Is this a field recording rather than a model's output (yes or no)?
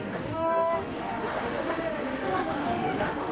no